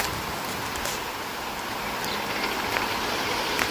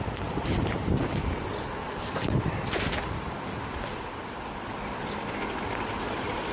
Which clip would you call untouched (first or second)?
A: first